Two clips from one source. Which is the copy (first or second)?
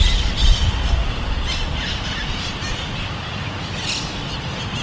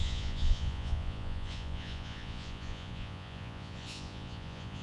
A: second